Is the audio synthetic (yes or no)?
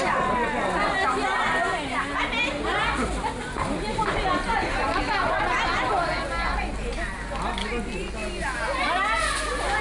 no